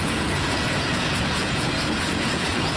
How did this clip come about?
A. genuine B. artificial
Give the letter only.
B